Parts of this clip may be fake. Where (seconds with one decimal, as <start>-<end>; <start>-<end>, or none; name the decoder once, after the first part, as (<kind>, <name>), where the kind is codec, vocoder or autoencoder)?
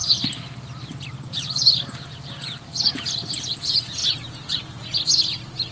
0.0-4.0 (vocoder, BigVGAN v2); 5.2-5.7